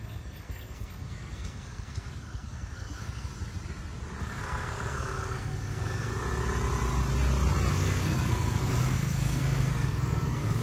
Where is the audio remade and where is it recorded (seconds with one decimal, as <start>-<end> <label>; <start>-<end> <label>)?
0.0-3.3 remade; 3.3-4.2 recorded; 4.2-6.1 remade; 6.1-7.7 recorded; 7.7-10.6 remade